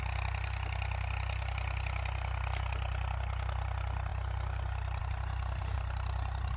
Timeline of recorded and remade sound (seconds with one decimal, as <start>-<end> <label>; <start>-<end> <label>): 0.0-6.6 recorded